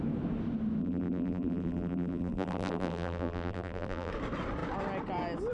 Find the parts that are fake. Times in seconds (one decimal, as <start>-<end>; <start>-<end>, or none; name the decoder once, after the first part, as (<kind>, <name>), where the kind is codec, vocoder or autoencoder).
0.8-4.1 (vocoder, BigVGAN v2)